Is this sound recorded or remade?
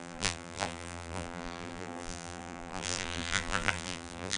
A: remade